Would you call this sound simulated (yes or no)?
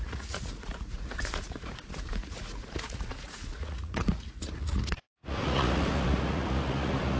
yes